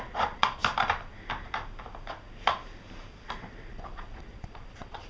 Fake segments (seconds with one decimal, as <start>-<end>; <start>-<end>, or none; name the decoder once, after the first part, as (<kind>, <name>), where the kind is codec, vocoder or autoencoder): 0.0-0.6 (vocoder, Vocos); 3.7-5.1